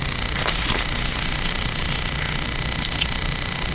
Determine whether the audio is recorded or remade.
recorded